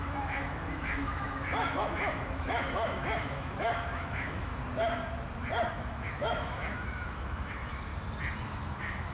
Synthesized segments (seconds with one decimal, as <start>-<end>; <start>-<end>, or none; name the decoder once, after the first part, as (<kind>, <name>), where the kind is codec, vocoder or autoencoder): 0.0-4.5 (autoencoder, DAC-VAE); 5.7-7.9; 8.4-9.1

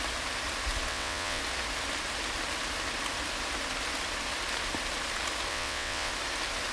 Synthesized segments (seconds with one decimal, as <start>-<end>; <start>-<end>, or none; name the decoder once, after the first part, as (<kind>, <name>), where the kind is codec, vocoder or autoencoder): 0.9-1.4 (vocoder, WaveNeXt); 5.5-6.1